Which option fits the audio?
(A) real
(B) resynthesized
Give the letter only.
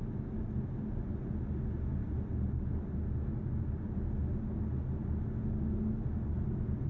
A